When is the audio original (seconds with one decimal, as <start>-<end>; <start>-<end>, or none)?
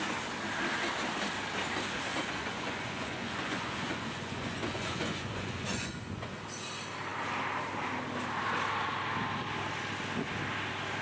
0.0-2.1; 6.4-11.0